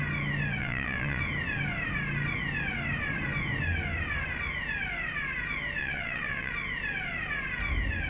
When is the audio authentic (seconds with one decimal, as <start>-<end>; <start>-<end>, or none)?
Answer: 0.0-0.6; 1.2-5.8; 6.5-8.1

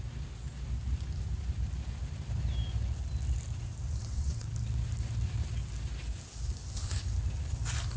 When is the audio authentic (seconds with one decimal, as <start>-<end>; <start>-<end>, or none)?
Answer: 0.0-4.0; 4.5-8.0

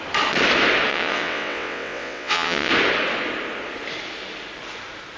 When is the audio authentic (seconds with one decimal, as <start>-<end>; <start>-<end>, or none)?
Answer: 0.0-0.9; 2.7-5.2